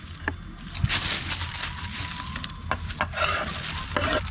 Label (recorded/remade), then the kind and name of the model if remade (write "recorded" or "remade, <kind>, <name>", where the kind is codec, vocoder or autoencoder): recorded